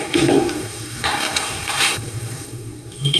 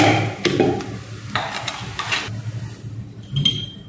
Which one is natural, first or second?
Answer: second